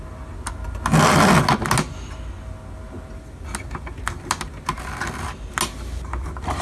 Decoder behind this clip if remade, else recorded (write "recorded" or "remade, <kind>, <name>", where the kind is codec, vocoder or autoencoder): recorded